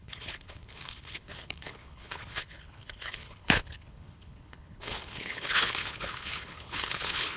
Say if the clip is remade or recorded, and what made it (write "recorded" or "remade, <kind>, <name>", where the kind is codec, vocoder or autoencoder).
remade, codec, HILCodec